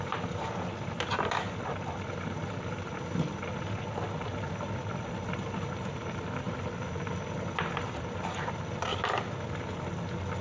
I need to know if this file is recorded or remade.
recorded